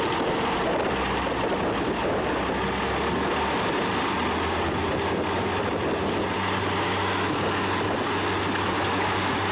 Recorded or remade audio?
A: recorded